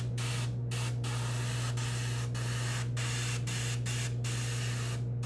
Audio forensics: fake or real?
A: real